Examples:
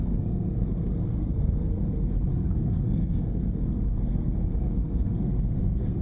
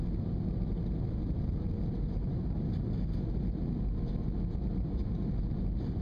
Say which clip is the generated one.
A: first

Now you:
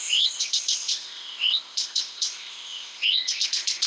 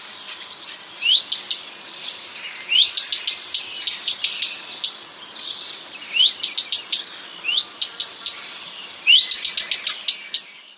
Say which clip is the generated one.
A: first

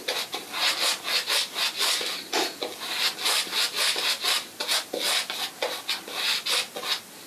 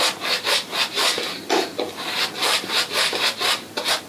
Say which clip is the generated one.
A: second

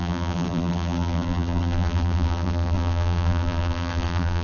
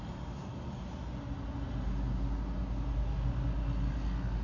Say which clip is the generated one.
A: first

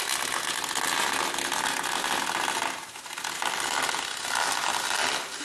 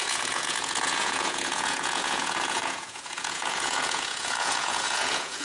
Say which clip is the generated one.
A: second